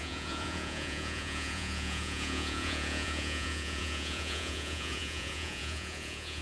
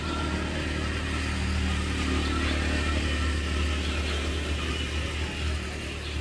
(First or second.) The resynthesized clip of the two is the first